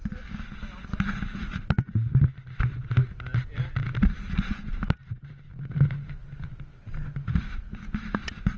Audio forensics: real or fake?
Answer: real